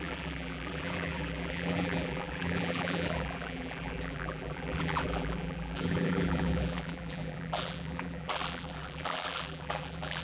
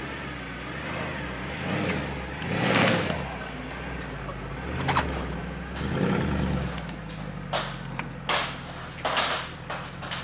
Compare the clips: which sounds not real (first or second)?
first